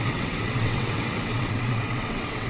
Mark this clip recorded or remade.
remade